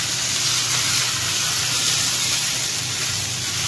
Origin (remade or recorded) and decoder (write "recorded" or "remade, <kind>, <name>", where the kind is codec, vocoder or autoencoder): recorded